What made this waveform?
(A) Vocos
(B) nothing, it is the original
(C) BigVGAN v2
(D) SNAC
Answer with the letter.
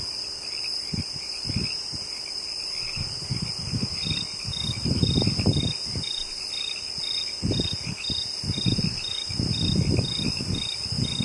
B